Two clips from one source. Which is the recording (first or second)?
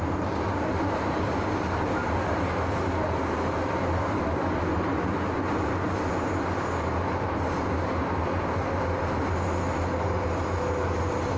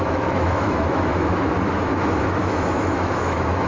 first